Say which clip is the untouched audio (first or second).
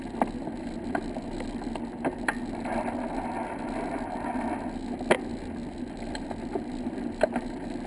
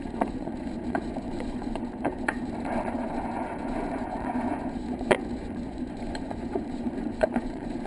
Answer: first